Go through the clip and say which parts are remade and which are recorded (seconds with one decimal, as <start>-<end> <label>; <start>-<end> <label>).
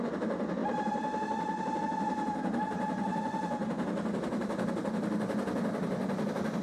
0.0-0.6 recorded; 0.6-1.8 remade; 1.8-6.6 recorded